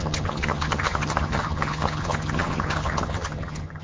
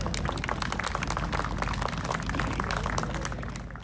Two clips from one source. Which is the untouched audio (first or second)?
second